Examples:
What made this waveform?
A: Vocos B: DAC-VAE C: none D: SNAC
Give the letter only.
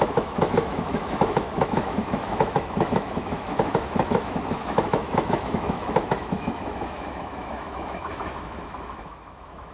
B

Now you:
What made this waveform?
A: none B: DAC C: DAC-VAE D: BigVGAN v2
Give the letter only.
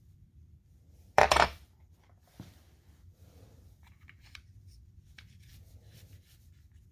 D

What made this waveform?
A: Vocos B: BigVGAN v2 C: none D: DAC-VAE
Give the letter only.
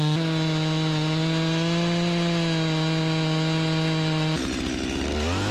C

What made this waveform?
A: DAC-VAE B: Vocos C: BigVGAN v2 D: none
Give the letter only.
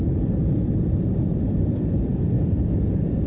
C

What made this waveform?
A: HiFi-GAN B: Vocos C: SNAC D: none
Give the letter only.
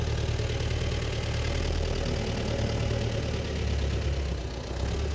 D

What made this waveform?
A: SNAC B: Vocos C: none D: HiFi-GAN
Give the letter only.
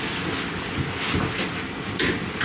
C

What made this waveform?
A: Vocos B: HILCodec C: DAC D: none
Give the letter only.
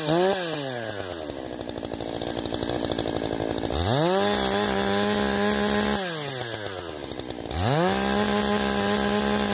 D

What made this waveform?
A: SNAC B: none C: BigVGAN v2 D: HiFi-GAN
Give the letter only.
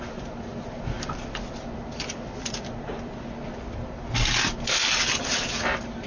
B